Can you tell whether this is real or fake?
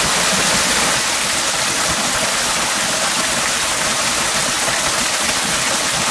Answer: real